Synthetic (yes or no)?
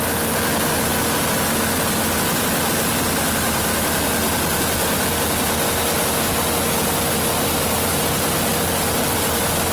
no